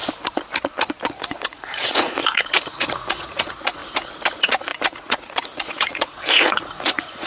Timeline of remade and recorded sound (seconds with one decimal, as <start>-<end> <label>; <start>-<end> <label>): 0.0-1.1 recorded; 1.1-3.8 remade; 3.8-4.3 recorded; 4.3-7.3 remade